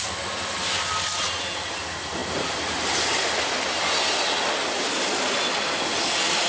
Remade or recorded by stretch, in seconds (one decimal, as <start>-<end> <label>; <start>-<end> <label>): 0.0-6.5 recorded